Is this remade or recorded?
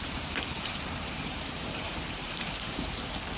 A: remade